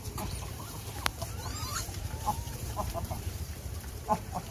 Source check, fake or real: fake